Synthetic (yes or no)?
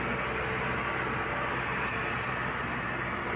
no